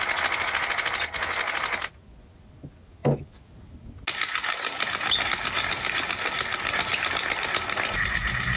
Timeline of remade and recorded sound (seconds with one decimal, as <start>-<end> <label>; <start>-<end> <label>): 0.0-8.6 recorded